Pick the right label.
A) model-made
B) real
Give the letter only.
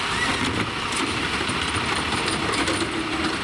A